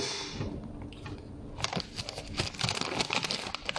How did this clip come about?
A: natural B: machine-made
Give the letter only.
A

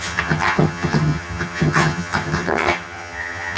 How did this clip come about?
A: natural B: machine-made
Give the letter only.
B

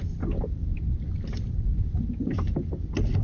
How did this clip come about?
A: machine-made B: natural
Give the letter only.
B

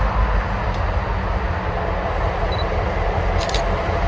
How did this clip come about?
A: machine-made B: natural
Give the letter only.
B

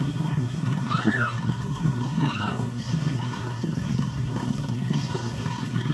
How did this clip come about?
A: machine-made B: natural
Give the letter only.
A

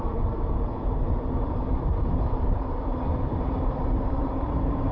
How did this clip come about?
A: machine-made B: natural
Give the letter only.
A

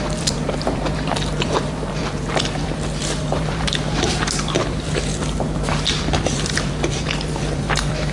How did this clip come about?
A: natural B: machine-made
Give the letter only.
B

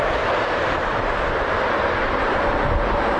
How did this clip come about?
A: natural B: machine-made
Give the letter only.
A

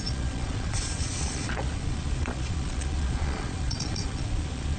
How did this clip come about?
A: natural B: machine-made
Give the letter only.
B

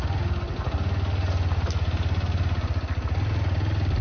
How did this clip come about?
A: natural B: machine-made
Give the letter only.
A